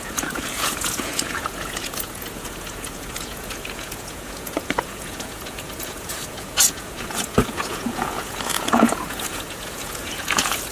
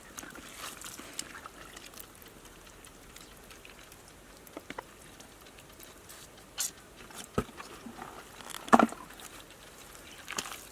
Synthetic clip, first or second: first